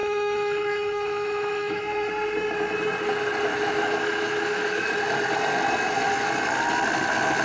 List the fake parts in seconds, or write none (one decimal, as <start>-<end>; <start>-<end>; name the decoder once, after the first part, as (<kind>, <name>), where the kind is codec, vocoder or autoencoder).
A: 0.0-2.1 (autoencoder, DAC-VAE); 3.5-4.9